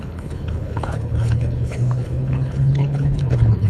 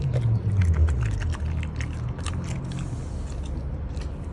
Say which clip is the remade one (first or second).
first